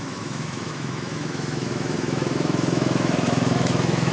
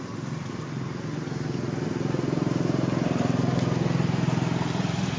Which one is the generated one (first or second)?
first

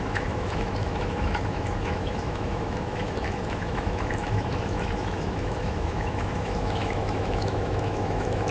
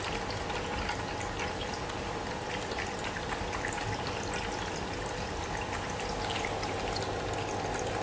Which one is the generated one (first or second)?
first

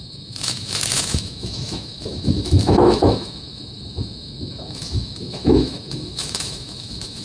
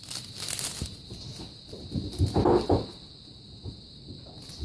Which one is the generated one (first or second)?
first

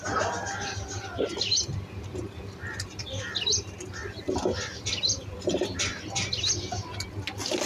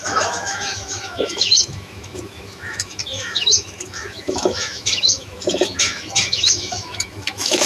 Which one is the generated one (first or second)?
second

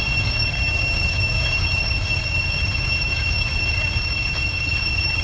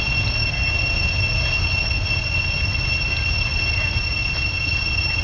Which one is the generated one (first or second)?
first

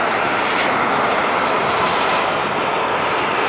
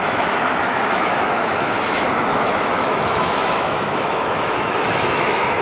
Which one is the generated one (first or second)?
second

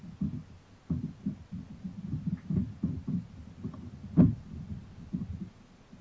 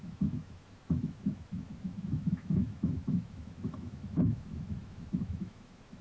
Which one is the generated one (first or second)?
second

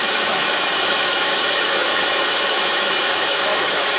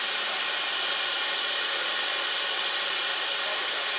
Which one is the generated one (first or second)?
first